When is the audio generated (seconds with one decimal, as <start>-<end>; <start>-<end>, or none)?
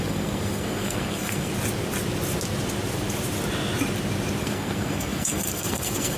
0.0-1.5; 4.4-6.2